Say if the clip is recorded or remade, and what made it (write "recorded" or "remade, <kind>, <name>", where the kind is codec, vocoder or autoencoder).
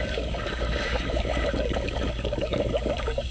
remade, codec, DAC